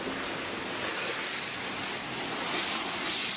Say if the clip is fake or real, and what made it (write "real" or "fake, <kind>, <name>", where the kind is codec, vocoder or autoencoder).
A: real